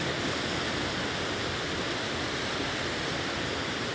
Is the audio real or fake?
real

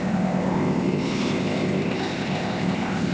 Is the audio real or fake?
fake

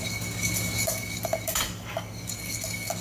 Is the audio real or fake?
fake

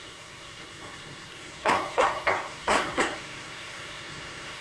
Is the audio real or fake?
fake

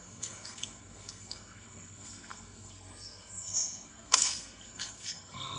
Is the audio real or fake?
fake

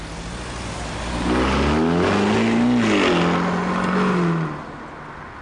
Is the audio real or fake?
real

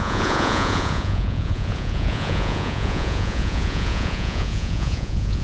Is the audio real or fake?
fake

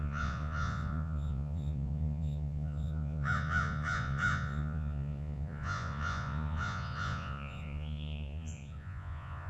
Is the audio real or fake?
fake